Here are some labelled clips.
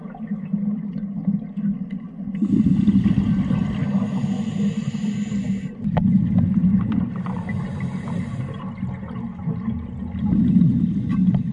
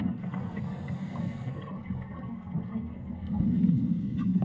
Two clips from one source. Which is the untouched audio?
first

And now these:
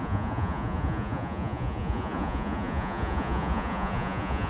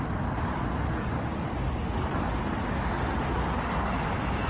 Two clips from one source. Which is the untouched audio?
second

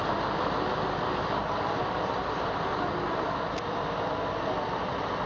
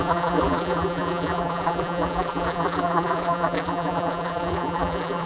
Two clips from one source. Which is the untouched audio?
first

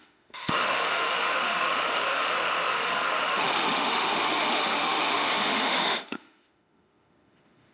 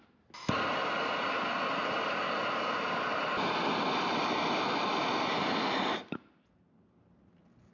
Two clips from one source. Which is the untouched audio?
second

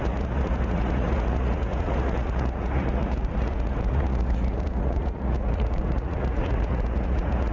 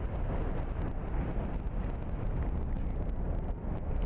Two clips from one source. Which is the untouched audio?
second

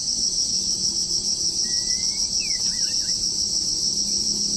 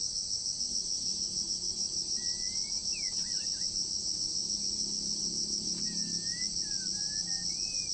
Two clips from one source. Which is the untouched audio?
second